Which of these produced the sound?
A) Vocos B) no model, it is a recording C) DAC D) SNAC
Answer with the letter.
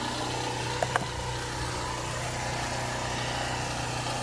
B